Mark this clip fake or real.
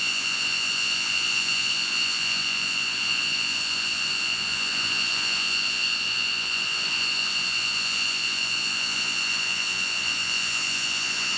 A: fake